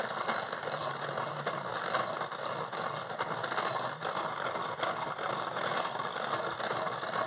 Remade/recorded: recorded